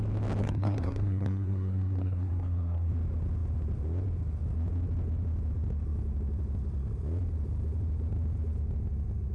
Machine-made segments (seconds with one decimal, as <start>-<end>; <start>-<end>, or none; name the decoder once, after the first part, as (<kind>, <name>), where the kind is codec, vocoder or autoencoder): 0.4-2.9 (codec, SNAC)